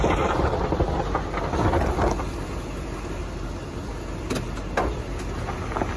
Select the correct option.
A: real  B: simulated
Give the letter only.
A